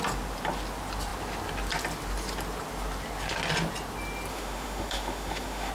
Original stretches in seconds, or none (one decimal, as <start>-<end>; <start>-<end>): 0.0-4.3